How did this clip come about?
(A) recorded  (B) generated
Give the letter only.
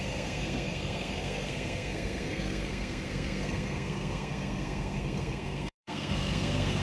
B